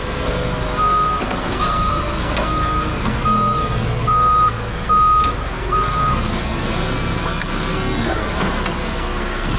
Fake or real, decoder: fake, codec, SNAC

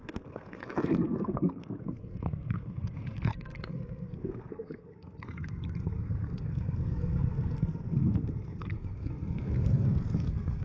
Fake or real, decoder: fake, codec, SNAC